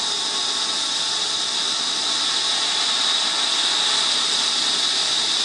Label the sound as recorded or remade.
recorded